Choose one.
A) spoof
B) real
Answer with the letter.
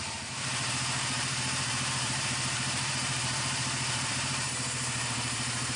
A